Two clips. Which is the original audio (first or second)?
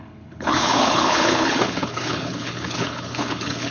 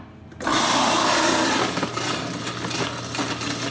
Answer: second